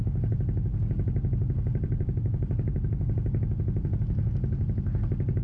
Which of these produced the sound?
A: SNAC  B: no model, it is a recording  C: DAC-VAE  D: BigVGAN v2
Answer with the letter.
B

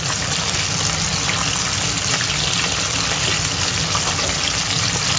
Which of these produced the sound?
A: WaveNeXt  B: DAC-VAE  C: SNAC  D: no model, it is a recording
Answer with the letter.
D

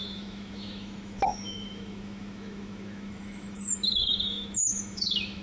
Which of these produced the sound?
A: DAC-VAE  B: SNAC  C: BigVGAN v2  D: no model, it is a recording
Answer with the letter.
A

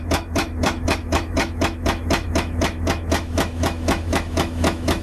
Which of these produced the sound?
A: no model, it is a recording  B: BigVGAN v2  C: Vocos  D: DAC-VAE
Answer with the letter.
D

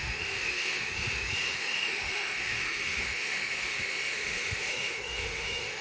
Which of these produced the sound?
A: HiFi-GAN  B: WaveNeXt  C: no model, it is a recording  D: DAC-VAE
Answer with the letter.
D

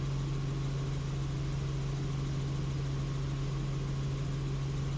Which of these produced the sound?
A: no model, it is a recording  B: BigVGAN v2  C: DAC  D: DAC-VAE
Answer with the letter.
A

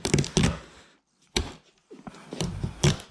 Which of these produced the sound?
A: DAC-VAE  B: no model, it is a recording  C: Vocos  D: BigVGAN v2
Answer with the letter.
B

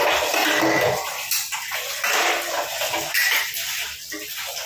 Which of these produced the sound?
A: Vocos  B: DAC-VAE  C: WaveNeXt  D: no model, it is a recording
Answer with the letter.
D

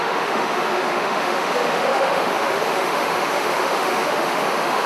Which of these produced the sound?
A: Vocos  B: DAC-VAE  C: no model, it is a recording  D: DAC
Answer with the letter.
B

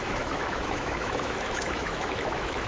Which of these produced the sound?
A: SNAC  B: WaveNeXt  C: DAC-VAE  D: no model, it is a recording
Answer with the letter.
C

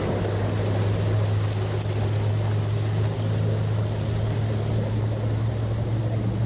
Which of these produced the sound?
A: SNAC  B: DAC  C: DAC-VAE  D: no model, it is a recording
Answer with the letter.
D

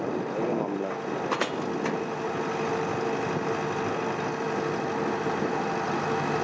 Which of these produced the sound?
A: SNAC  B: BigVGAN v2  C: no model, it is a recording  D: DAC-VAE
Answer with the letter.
C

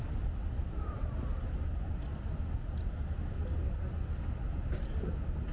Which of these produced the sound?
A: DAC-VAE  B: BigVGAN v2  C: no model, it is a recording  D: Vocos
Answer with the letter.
C